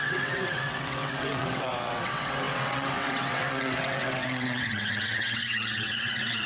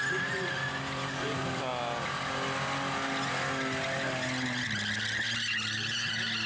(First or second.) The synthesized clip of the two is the first